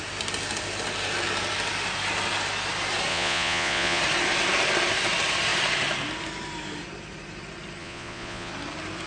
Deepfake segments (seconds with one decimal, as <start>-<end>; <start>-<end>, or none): 3.1-4.0; 7.8-8.5